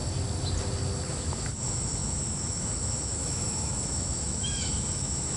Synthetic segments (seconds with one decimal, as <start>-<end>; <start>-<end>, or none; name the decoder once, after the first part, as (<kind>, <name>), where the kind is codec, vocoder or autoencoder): 1.1-5.4 (autoencoder, DAC-VAE)